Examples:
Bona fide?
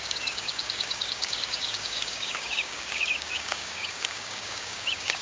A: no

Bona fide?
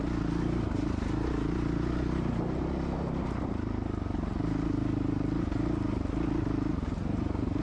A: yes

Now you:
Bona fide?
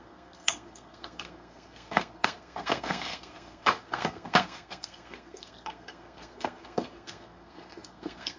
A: no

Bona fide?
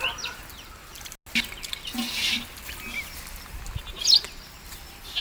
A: yes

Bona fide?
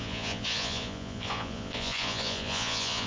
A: no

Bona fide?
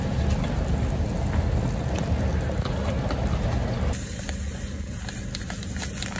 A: yes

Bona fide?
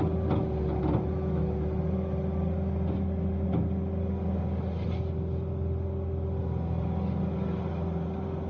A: yes